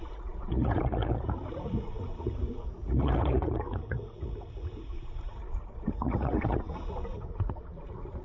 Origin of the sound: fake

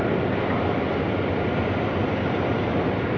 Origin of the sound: real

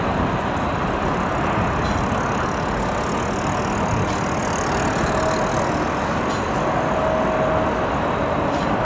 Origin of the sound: real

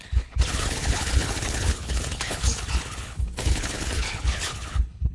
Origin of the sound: fake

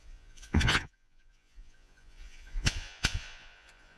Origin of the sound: fake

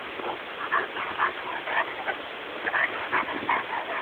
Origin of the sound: real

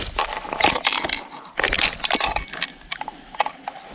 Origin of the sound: real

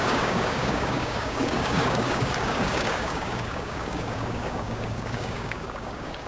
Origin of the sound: fake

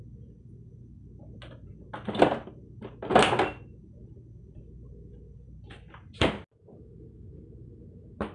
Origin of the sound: real